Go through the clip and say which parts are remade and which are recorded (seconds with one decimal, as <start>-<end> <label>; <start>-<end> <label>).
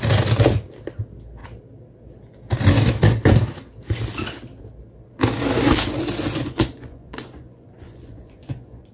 0.0-6.4 recorded; 6.4-8.9 remade